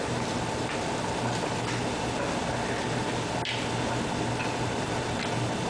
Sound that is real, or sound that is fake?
real